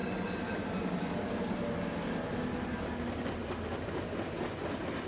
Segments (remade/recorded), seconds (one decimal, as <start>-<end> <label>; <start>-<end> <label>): 0.0-5.1 recorded

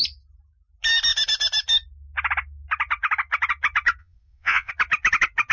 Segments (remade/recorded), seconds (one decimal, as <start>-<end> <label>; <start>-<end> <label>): 0.0-4.0 recorded; 4.0-4.7 remade; 4.7-5.5 recorded

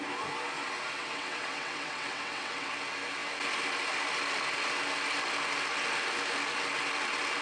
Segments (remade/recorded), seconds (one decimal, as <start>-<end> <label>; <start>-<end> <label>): 0.0-1.0 recorded; 1.0-2.7 remade; 2.7-7.4 recorded

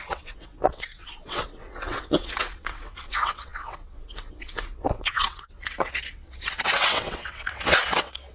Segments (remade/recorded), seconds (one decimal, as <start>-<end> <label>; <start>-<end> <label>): 0.0-8.3 remade

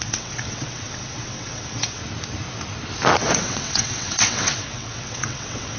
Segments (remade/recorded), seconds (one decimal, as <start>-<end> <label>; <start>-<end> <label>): 0.0-2.0 remade; 2.0-3.2 recorded; 3.2-5.8 remade